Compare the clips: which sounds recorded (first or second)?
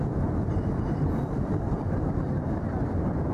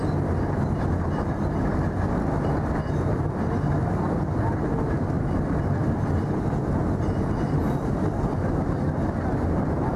second